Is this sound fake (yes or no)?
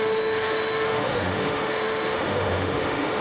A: yes